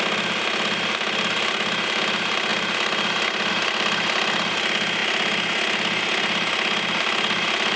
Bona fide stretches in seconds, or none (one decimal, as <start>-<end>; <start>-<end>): 0.0-7.8

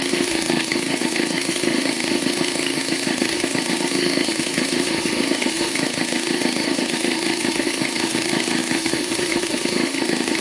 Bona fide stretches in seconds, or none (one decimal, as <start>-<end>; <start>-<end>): none

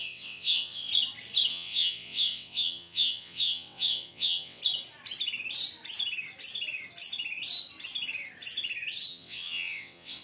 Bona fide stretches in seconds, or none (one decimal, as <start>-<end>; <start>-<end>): 0.9-1.5; 4.6-9.1

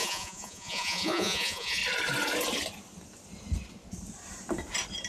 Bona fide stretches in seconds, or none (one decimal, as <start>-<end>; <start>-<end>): 1.8-5.1